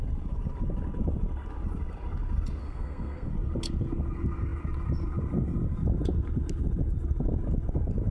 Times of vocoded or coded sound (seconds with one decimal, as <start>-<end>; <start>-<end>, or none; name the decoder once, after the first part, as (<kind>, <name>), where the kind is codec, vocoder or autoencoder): 2.6-3.3 (codec, SNAC)